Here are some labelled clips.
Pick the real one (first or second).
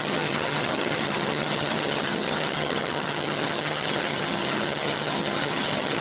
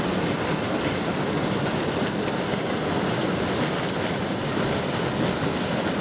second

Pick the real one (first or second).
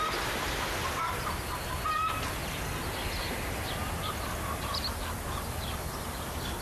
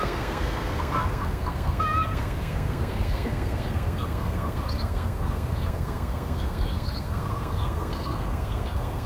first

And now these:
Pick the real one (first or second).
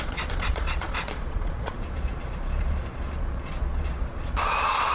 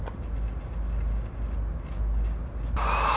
second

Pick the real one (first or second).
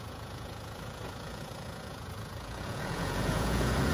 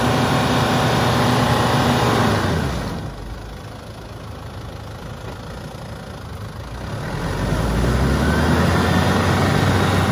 second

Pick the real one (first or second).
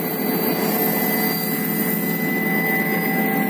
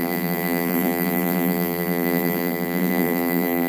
first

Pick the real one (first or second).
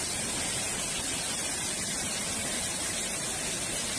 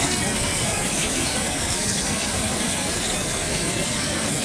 first